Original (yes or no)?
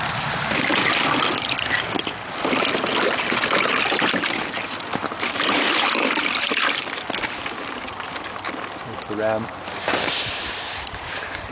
no